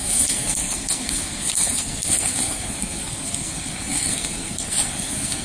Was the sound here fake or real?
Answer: fake